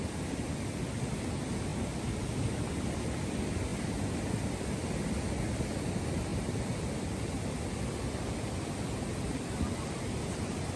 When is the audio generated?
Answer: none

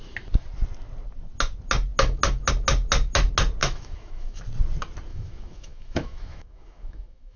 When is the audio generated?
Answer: 3.6-4.4; 5.1-7.4

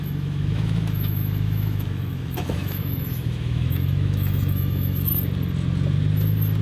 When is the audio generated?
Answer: 0.0-5.1